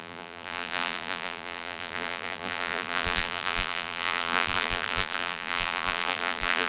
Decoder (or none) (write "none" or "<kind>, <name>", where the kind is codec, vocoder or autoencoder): vocoder, BigVGAN v2